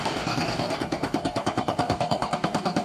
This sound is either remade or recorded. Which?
remade